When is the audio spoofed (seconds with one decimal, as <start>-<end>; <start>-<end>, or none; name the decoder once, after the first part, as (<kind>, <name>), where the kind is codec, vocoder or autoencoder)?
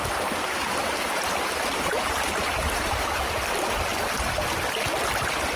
0.0-3.4 (vocoder, BigVGAN v2)